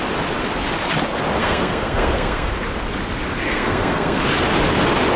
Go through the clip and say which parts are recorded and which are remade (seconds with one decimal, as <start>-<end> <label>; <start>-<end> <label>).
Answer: 0.0-1.4 recorded; 1.4-2.5 remade; 2.5-3.5 recorded; 3.5-4.2 remade; 4.2-5.2 recorded